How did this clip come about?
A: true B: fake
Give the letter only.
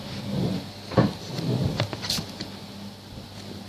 A